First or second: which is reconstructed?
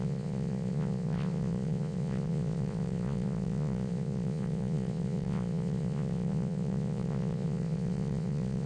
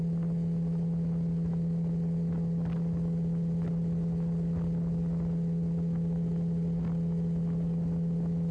first